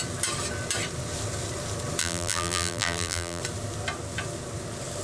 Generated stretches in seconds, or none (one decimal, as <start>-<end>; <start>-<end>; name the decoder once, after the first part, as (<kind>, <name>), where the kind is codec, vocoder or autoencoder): 2.0-3.4 (vocoder, BigVGAN v2)